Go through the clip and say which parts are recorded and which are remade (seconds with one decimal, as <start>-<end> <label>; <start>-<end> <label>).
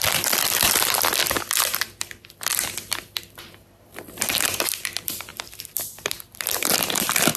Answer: 0.0-1.2 remade; 1.2-3.2 recorded; 3.2-7.4 remade